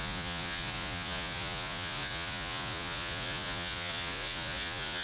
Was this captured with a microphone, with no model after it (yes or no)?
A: no